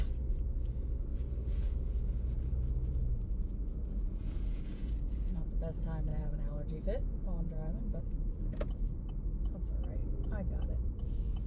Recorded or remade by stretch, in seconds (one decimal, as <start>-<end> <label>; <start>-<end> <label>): 0.0-1.1 recorded; 1.1-3.1 remade; 3.1-3.7 recorded; 3.7-5.5 remade; 5.5-6.1 recorded; 6.1-8.0 remade; 8.0-11.5 recorded